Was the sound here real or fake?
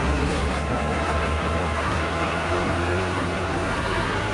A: fake